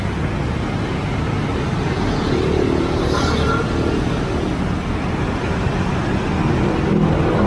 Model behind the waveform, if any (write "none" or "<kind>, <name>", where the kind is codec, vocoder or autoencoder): none